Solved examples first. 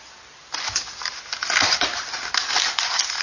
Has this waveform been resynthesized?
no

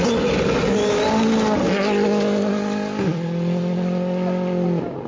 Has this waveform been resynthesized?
no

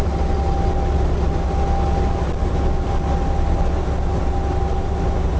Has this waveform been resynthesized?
no